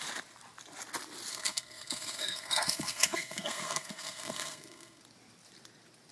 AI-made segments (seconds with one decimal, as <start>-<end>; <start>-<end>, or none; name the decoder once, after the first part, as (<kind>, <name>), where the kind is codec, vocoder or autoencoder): 1.3-5.0 (codec, SNAC)